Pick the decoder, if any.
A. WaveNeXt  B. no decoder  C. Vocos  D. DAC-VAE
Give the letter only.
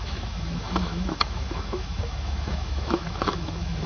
D